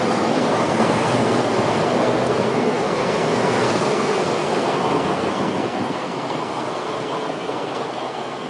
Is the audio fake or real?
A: fake